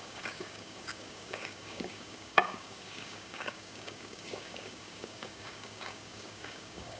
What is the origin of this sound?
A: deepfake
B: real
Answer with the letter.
A